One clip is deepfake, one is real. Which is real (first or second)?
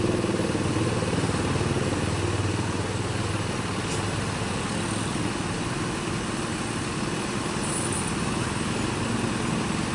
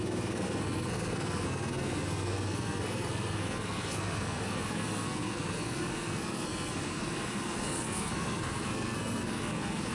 first